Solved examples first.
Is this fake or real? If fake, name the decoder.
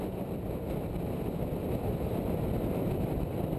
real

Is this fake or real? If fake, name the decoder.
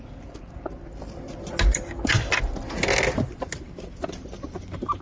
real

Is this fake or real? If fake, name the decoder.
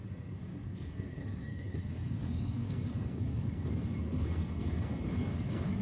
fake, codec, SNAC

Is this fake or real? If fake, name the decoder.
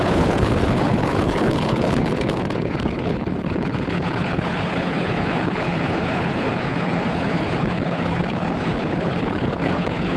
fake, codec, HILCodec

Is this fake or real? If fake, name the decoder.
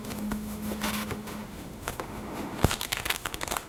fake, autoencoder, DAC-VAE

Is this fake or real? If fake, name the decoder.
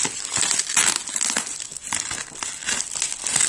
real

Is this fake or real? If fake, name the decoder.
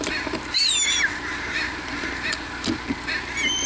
fake, vocoder, BigVGAN v2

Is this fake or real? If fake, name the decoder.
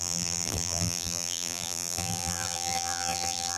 fake, vocoder, BigVGAN v2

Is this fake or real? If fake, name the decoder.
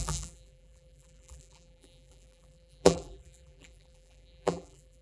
fake, vocoder, BigVGAN v2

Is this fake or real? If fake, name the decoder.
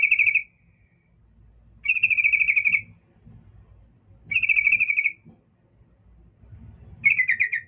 real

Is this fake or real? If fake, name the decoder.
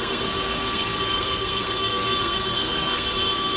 fake, codec, SNAC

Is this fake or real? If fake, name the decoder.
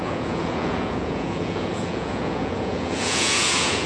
fake, vocoder, Vocos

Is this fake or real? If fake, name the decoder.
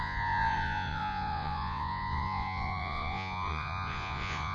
fake, vocoder, Vocos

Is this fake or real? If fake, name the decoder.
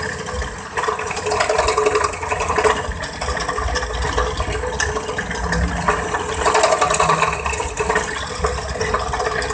real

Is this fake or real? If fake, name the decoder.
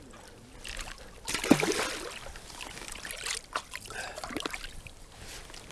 real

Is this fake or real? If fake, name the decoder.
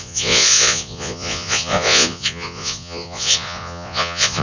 fake, vocoder, Vocos